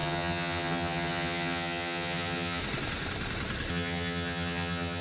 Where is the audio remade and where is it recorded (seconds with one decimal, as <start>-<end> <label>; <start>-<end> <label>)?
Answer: 0.0-2.6 remade; 2.6-3.7 recorded; 3.7-5.0 remade